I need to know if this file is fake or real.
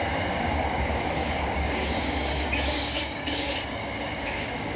fake